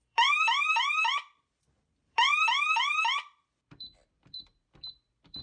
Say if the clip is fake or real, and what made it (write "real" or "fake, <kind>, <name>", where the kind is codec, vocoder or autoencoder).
fake, vocoder, BigVGAN v2